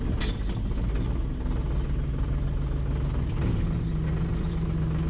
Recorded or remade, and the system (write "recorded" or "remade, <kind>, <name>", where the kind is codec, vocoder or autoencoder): recorded